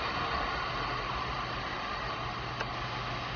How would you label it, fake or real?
real